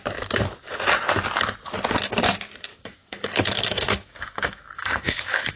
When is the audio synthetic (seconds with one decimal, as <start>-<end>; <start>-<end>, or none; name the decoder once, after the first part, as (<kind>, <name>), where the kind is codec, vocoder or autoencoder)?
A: 2.7-5.6 (autoencoder, DAC-VAE)